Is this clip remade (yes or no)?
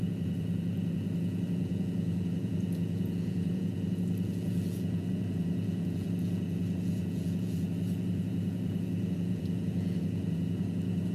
yes